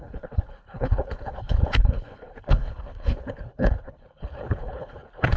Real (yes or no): no